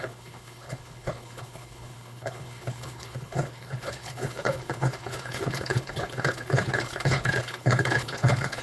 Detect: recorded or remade remade